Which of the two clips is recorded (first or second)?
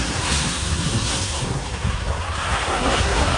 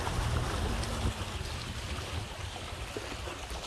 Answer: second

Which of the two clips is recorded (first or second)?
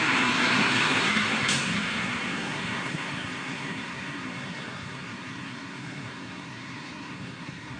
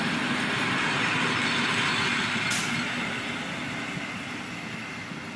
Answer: second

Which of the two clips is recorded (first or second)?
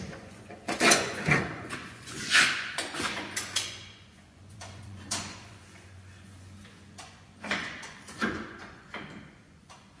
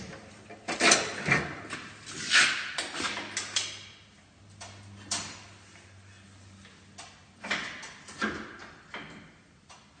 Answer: second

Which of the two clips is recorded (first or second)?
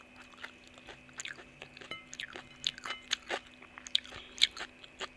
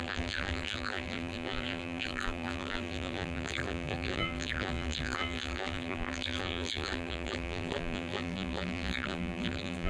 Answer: first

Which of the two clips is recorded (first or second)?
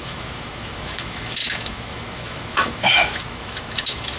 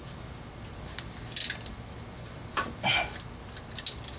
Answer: second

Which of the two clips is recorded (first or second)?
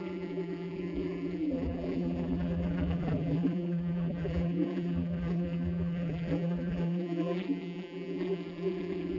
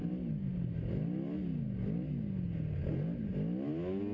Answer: second